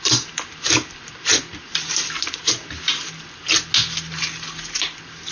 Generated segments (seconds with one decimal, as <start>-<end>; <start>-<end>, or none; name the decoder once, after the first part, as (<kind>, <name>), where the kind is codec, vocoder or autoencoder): none